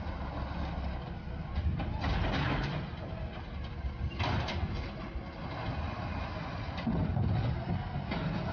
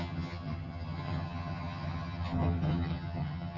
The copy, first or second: second